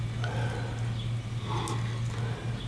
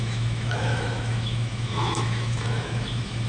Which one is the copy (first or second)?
second